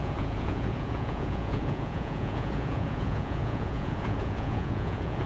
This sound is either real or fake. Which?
fake